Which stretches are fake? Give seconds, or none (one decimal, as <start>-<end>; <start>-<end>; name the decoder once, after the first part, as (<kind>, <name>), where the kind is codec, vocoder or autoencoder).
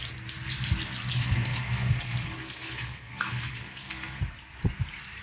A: 1.1-4.2 (codec, SNAC)